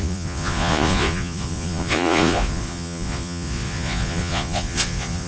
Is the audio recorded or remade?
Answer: remade